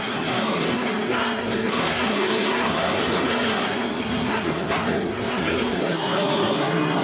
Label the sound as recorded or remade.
remade